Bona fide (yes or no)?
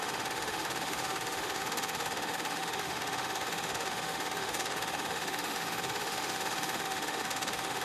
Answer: no